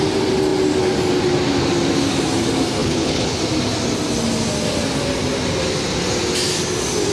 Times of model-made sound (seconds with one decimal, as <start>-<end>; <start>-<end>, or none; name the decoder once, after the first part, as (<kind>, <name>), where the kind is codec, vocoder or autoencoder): 2.8-3.4 (codec, HILCodec)